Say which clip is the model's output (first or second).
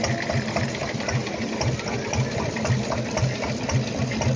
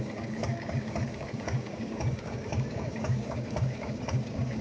second